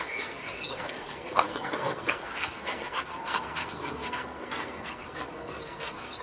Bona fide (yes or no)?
no